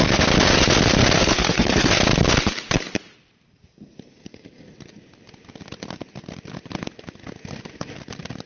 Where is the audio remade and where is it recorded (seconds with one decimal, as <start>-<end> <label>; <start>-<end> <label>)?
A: 0.0-1.2 recorded; 1.2-1.9 remade; 1.9-8.5 recorded